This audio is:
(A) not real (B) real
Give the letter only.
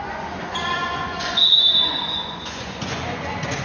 A